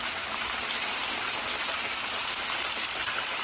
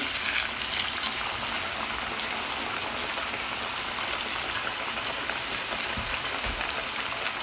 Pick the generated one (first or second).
first